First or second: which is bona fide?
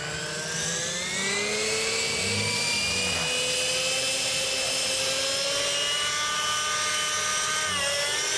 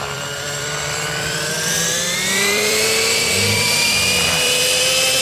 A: first